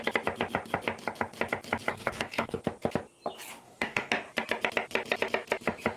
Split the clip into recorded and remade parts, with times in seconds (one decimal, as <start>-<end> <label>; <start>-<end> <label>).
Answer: 0.0-1.9 recorded; 1.9-2.6 remade; 2.6-3.5 recorded; 3.5-4.1 remade; 4.1-6.0 recorded